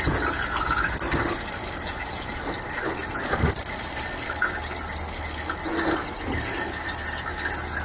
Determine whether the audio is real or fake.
real